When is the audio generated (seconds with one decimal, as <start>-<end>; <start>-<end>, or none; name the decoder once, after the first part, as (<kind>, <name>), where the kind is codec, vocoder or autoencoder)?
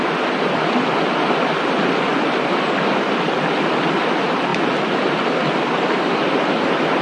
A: none